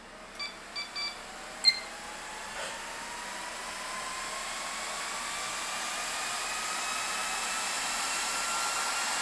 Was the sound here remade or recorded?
recorded